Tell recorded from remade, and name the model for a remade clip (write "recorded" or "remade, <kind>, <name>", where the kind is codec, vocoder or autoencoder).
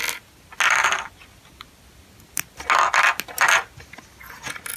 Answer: recorded